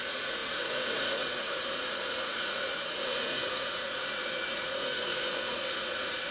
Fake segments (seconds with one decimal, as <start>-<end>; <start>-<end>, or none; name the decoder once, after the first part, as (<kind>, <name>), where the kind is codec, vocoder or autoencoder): 0.0-6.3 (vocoder, Vocos)